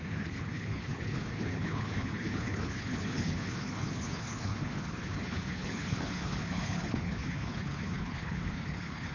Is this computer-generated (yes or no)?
yes